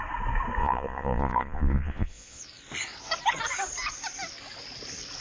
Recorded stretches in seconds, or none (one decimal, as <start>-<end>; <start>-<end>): 0.0-0.6; 2.4-5.2